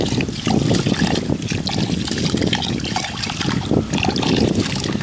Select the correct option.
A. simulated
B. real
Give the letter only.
B